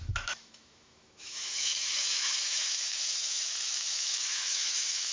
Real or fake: fake